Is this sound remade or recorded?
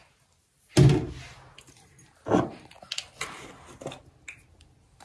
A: recorded